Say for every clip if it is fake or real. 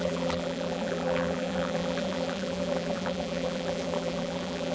fake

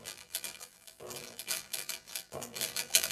fake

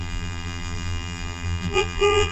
fake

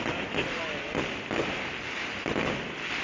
real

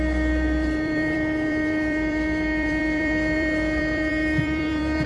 fake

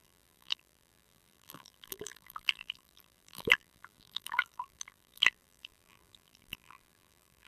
fake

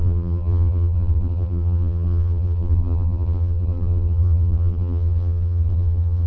fake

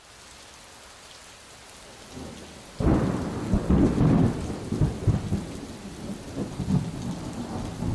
real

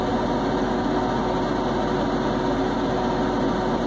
real